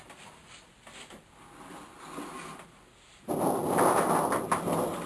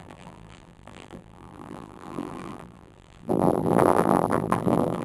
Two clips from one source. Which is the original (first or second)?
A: first